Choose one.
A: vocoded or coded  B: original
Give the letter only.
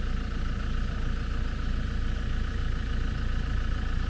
B